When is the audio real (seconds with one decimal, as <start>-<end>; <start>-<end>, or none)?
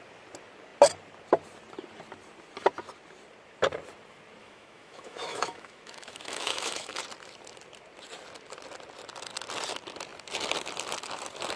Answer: 0.0-4.4; 7.0-11.6